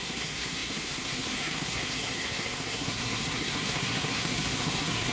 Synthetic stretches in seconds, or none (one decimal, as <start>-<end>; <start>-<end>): 0.0-5.1

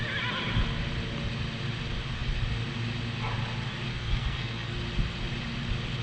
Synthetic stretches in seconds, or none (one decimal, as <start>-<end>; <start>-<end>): 3.9-4.7

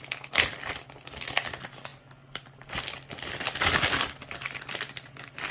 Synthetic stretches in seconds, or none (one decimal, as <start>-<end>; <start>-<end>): none

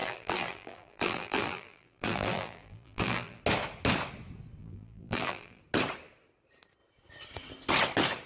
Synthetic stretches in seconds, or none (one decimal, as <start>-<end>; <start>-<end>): 0.0-3.4; 4.6-5.6

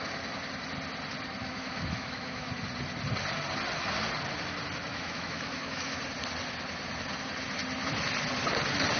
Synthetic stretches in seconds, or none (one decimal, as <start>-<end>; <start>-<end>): 1.4-2.5; 4.9-6.0

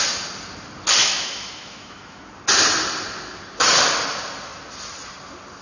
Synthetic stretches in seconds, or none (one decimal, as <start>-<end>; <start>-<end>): 1.0-2.2

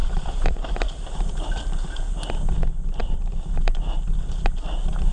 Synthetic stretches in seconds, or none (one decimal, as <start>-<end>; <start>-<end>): 0.0-0.8; 3.0-3.8

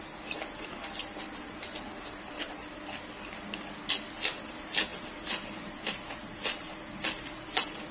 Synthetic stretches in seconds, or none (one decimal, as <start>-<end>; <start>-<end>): none